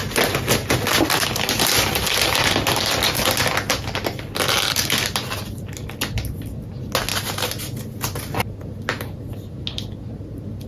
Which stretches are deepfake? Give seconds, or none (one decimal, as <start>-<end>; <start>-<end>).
none